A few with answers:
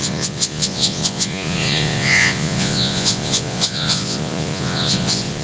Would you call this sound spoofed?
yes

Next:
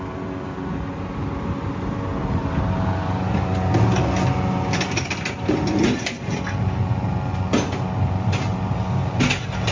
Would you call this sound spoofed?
no